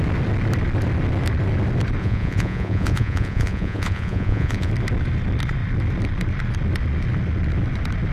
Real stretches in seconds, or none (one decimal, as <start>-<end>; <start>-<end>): 0.0-2.0; 4.7-8.1